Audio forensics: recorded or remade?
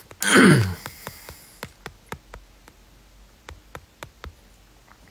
recorded